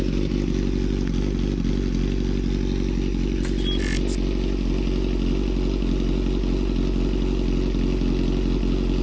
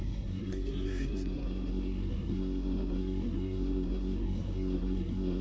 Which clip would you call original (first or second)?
first